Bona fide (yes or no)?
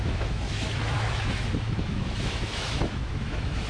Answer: no